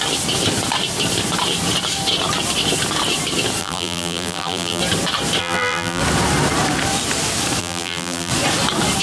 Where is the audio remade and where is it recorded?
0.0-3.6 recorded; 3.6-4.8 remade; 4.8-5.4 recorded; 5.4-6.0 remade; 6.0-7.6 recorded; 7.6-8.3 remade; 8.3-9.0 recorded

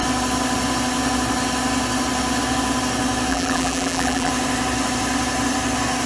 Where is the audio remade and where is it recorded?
0.0-3.3 recorded; 3.3-4.3 remade; 4.3-6.1 recorded

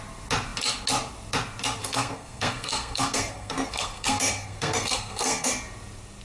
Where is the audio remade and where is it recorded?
0.0-1.8 recorded; 1.8-5.5 remade; 5.5-6.2 recorded

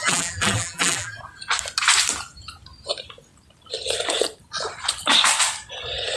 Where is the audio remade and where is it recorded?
0.0-1.2 remade; 1.2-6.2 recorded

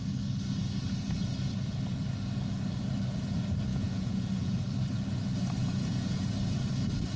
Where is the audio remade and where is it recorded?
0.0-3.7 recorded; 3.7-4.6 remade; 4.6-5.6 recorded; 5.6-6.3 remade; 6.3-7.2 recorded

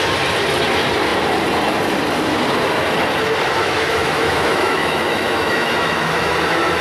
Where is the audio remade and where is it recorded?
0.0-3.6 recorded; 3.6-6.3 remade; 6.3-6.8 recorded